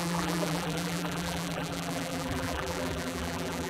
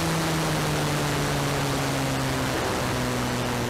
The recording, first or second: second